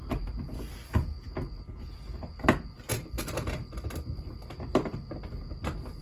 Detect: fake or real real